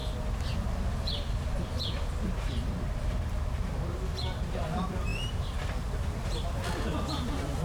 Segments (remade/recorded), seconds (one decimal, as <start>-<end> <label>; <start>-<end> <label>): 0.0-7.6 recorded